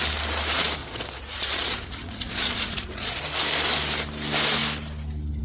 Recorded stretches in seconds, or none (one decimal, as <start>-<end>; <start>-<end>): 0.0-0.8; 3.2-5.4